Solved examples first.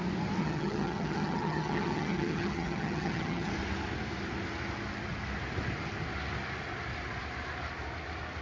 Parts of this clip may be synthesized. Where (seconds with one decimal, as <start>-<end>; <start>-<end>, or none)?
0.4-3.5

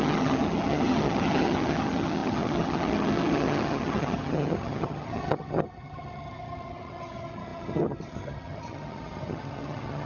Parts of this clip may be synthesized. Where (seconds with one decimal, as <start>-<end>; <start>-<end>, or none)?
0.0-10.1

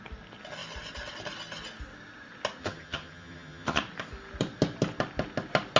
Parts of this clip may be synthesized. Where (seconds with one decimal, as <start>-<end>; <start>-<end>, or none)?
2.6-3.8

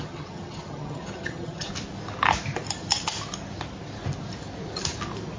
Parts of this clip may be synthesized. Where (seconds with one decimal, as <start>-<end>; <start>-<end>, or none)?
0.0-1.7

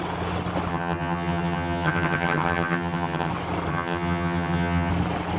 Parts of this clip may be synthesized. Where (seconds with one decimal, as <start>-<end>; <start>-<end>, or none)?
0.7-3.3; 3.7-4.9